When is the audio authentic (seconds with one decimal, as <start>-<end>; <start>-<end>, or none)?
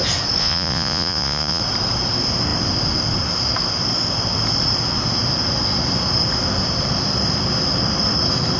0.0-0.4; 1.6-8.6